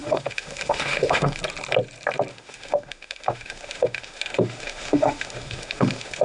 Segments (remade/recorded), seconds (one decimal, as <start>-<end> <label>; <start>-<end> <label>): 0.0-1.4 remade; 1.4-2.3 recorded; 2.3-6.2 remade